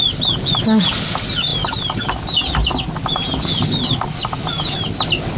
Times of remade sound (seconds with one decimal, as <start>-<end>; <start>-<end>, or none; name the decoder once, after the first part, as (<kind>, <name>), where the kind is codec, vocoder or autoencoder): none